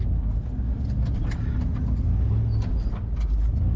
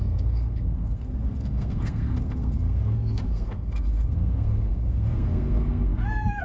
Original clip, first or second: first